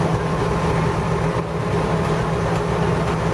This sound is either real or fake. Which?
real